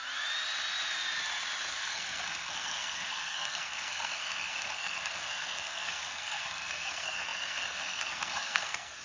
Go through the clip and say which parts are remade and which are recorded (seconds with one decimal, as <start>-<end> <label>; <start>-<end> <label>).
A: 0.0-1.7 recorded; 1.7-9.0 remade